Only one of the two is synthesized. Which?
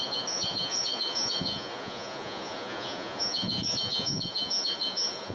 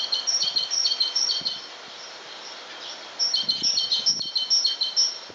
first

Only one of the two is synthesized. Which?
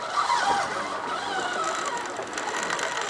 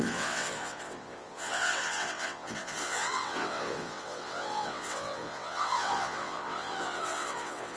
second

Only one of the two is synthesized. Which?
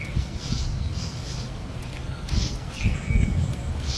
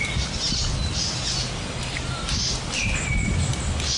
first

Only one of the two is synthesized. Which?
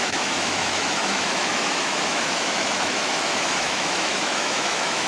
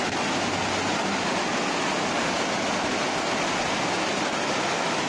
first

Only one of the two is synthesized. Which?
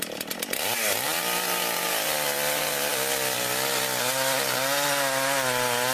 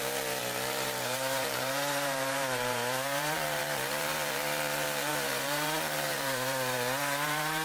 second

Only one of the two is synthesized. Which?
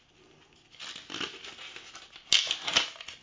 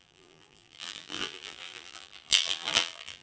second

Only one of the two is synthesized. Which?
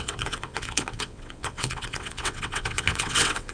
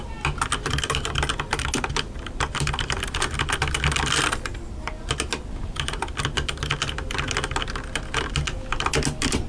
first